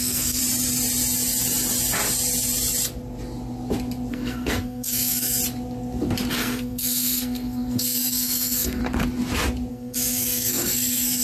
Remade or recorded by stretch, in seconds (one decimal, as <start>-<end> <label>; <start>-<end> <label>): 0.0-0.4 remade; 0.4-4.1 recorded; 4.1-5.4 remade; 5.4-6.3 recorded; 6.3-8.8 remade; 8.8-9.7 recorded; 9.7-11.2 remade